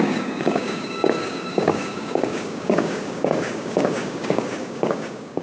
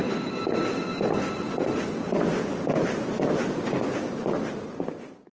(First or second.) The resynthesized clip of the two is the first